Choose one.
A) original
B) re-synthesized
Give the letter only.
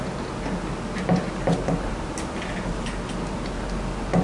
A